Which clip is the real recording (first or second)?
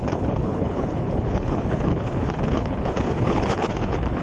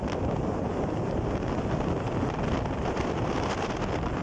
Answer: second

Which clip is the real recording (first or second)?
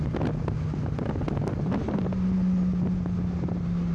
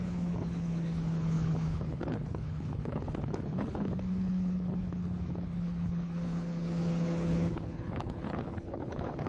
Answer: first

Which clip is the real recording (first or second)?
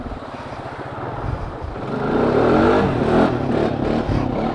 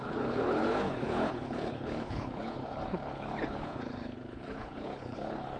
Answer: first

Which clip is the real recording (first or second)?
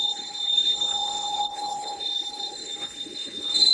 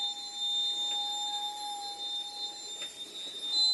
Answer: second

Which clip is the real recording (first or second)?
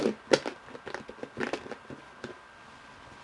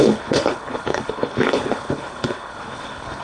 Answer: first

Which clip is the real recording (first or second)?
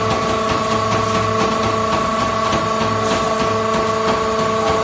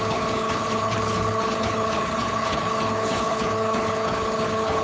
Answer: first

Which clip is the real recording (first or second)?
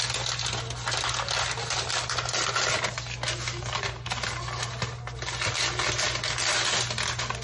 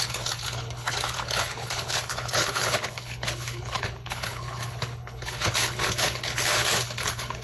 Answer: first